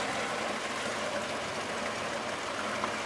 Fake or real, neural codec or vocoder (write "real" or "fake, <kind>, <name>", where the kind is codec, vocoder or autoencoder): real